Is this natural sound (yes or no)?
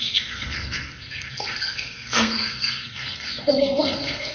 no